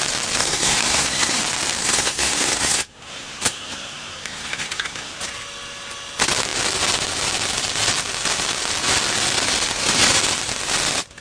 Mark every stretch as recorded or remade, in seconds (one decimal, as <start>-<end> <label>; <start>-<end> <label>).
0.0-0.4 recorded; 0.4-1.4 remade; 1.4-1.8 recorded; 1.8-5.2 remade; 5.2-11.2 recorded